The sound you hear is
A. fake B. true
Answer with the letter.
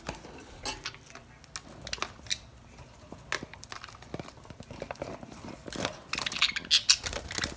B